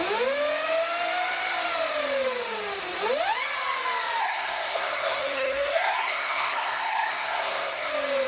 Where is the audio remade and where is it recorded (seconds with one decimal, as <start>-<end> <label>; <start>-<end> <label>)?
0.0-4.2 recorded; 4.2-7.9 remade; 7.9-8.3 recorded